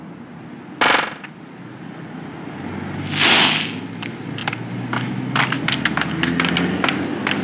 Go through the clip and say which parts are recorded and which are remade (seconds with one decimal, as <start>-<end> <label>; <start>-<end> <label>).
0.0-7.4 recorded